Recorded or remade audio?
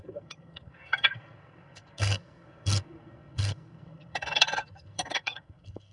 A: remade